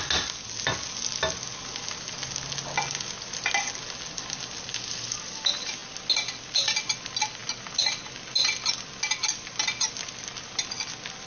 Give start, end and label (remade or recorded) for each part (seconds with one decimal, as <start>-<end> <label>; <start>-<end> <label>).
0.0-11.3 recorded